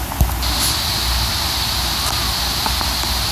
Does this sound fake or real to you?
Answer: real